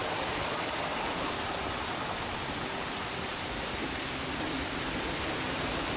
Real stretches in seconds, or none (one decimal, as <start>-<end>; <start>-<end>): 0.0-6.0